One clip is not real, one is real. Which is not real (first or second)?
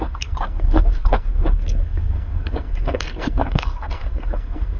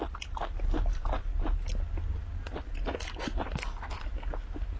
first